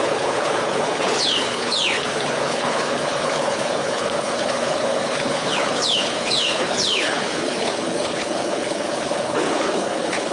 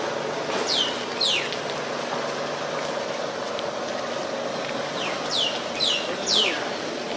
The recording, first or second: second